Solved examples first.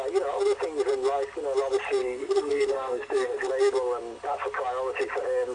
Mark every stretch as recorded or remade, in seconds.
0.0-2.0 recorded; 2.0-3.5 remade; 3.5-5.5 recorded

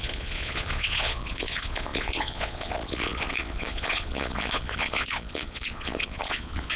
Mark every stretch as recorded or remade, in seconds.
0.0-6.8 remade

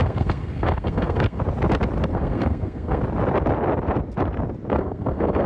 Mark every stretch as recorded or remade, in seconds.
0.0-1.4 remade; 1.4-2.1 recorded; 2.1-3.0 remade; 3.0-4.7 recorded; 4.7-5.5 remade

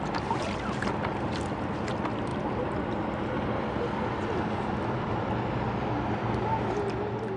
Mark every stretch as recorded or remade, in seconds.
0.0-7.4 recorded

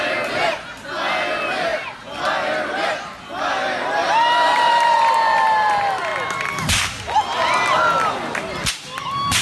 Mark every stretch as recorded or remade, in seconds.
0.0-4.0 recorded; 4.0-4.9 remade; 4.9-9.4 recorded